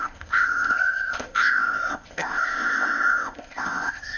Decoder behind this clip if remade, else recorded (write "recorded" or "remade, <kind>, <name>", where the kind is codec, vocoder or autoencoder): remade, codec, ZipCodec